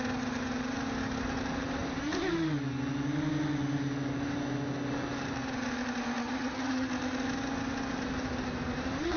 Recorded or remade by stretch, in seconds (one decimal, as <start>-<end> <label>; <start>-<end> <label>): 0.0-6.2 recorded; 6.2-6.9 remade; 6.9-9.2 recorded